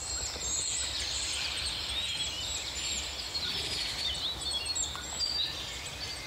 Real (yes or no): yes